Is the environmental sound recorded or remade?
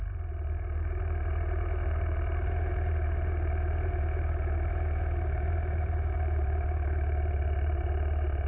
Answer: remade